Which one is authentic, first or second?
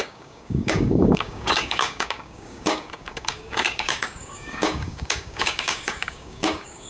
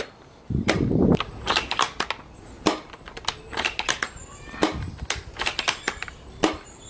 second